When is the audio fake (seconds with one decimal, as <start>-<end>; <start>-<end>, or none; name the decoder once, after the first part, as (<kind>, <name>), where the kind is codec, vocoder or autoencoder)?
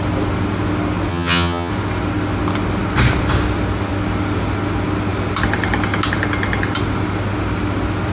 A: 1.1-1.7 (vocoder, HiFi-GAN)